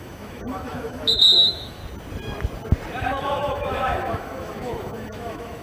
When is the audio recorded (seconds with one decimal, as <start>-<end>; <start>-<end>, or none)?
1.8-3.0